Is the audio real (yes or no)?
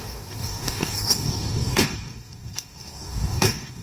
no